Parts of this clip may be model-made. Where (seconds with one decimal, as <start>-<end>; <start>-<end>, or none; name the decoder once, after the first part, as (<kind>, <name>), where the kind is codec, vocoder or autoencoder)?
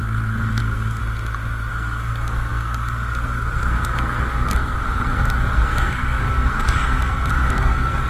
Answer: 0.0-1.0 (codec, SNAC); 1.7-8.1